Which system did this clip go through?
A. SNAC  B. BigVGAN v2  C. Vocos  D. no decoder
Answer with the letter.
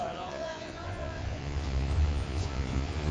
C